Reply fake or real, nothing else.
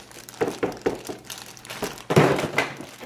fake